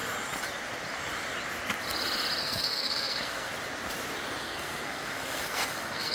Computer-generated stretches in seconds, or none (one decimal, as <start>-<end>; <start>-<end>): 2.4-3.5; 4.4-6.1